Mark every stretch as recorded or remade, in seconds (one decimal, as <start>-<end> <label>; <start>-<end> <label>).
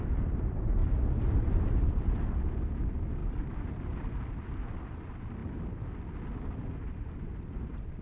0.0-5.4 remade; 5.4-6.7 recorded; 6.7-8.0 remade